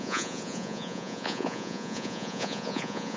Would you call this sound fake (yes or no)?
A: yes